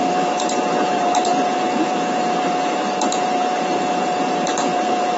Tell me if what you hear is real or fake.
fake